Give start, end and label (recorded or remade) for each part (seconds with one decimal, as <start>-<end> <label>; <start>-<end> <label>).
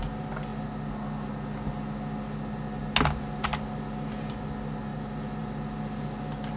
0.0-6.6 recorded